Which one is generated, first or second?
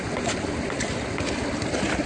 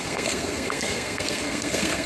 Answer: second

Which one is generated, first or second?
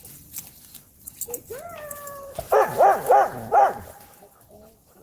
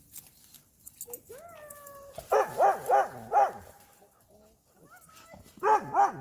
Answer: first